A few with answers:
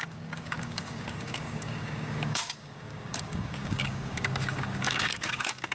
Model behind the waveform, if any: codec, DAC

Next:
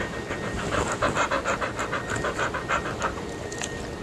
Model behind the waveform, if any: none